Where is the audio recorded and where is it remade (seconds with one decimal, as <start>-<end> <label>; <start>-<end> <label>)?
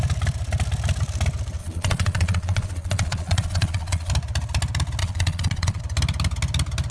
0.0-1.6 recorded; 1.6-4.1 remade; 4.1-5.0 recorded; 5.0-5.8 remade; 5.8-6.9 recorded